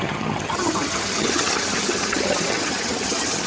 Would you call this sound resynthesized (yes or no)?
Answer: yes